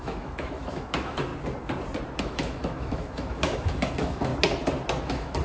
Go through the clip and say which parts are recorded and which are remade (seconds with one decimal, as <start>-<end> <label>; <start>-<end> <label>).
0.0-1.3 remade; 1.3-2.2 recorded; 2.2-4.3 remade; 4.3-5.0 recorded; 5.0-5.4 remade